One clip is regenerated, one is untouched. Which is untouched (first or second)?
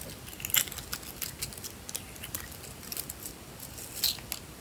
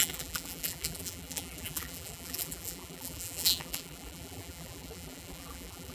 first